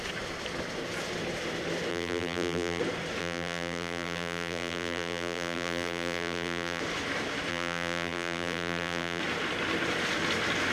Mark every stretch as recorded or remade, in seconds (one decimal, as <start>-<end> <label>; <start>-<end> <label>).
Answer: 0.0-1.9 recorded; 1.9-2.8 remade; 2.8-3.2 recorded; 3.2-6.8 remade; 6.8-7.5 recorded; 7.5-9.2 remade; 9.2-10.7 recorded